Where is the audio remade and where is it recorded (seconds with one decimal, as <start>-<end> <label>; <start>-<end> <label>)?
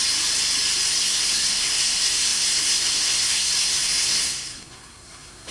0.0-0.9 recorded; 0.9-5.5 remade